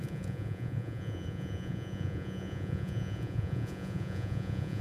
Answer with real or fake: fake